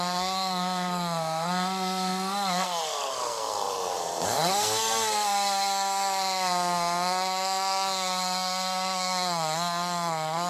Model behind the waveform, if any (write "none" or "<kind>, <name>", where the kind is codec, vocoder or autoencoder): codec, SNAC